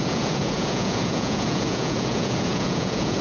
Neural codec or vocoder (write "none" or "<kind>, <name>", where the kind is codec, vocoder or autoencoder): vocoder, Vocos